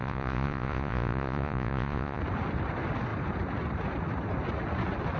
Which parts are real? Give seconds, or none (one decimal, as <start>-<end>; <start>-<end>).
2.2-5.2